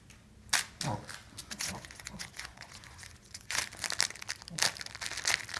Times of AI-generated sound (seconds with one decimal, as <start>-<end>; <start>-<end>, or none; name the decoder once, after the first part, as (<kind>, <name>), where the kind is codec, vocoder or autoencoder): 1.4-3.6 (vocoder, Vocos)